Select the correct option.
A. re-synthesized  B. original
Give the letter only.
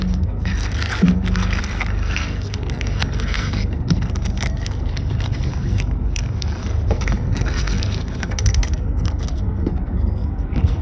A